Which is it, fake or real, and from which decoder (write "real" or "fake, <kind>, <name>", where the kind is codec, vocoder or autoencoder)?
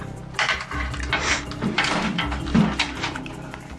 fake, vocoder, BigVGAN v2